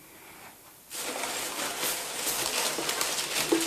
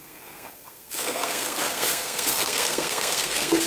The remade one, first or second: second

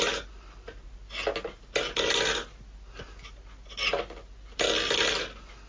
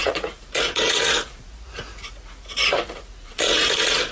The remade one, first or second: second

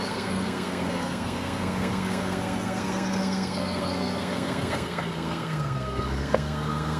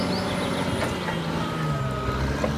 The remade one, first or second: first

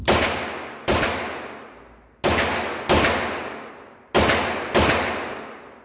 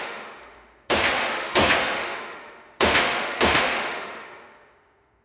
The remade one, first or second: second